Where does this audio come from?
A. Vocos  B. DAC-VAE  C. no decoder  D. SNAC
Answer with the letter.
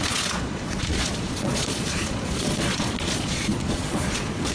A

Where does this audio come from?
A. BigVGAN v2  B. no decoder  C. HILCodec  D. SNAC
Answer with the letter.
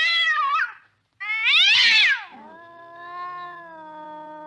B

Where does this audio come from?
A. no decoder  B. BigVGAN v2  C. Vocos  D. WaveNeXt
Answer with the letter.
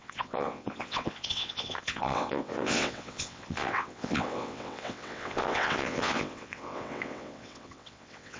D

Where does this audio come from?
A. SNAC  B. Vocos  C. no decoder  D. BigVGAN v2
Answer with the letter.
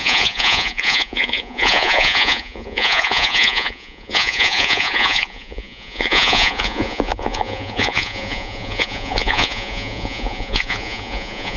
B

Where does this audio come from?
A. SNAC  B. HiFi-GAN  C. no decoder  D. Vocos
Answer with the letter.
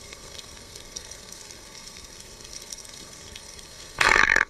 A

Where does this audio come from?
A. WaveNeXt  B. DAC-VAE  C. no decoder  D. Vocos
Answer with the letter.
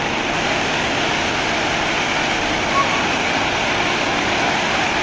C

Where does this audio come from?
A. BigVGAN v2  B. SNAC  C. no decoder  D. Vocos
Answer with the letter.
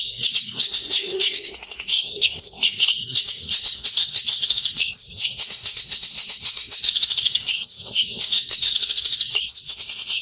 B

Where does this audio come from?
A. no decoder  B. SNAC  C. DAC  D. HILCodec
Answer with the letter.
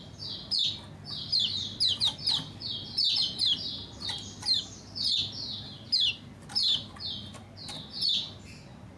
A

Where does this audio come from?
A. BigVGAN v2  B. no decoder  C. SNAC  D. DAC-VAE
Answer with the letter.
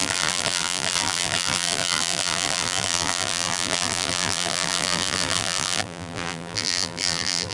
A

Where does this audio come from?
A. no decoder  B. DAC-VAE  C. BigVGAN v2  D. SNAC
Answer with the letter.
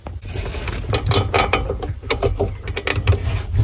A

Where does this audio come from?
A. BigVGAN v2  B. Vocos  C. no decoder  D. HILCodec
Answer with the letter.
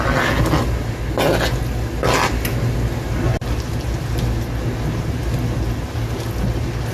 C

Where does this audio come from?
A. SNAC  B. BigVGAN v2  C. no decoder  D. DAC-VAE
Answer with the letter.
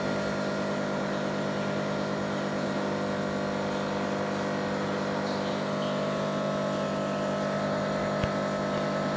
C